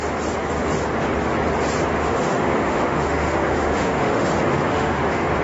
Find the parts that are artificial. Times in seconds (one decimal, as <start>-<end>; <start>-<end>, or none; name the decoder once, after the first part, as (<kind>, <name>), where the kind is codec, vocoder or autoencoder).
2.0-5.4 (autoencoder, DAC-VAE)